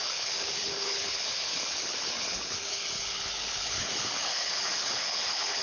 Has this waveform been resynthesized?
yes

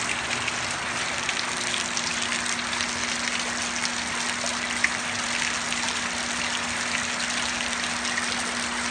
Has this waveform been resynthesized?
no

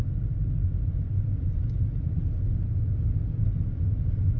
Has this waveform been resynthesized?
no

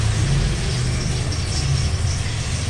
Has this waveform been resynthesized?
no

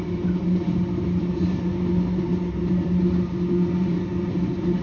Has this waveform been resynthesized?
no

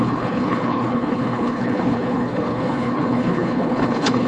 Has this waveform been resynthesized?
yes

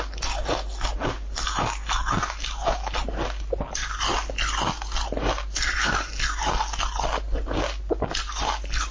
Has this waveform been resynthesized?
no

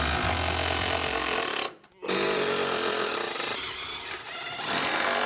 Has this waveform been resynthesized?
no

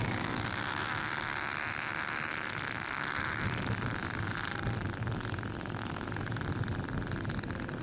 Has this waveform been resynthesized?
no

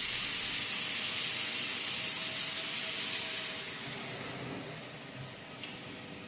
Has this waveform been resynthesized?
no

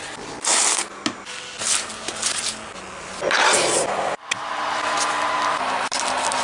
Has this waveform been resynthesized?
no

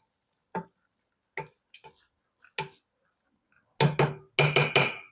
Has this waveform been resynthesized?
no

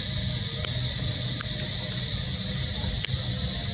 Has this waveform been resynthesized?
no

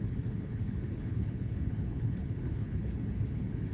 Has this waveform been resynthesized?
yes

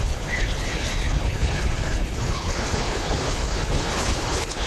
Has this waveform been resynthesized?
yes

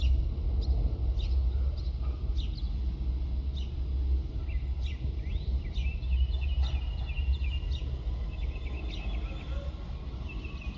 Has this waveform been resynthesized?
no